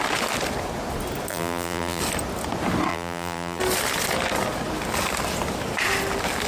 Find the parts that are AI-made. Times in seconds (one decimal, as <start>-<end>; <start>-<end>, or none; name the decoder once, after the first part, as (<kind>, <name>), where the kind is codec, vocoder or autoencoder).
1.3-2.0 (vocoder, BigVGAN v2); 2.9-3.6